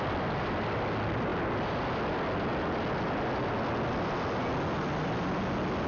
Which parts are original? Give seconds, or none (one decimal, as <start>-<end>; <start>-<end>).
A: 0.0-5.9